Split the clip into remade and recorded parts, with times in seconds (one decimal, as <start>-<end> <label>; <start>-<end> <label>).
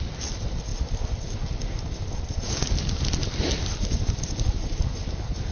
0.0-5.5 recorded